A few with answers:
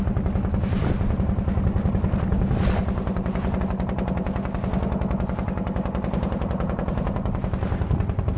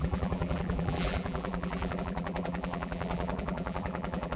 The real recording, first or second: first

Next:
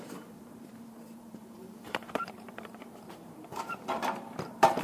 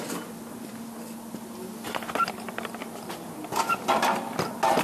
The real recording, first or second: second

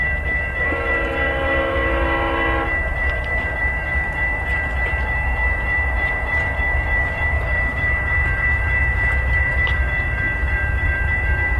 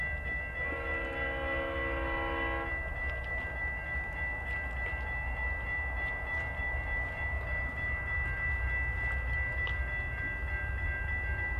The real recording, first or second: second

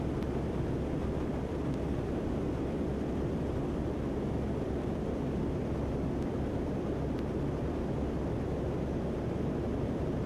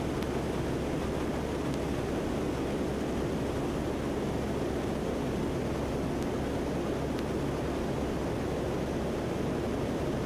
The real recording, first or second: second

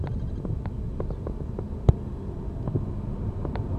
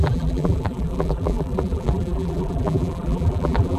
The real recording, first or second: first